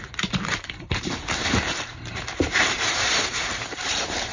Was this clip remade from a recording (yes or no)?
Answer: yes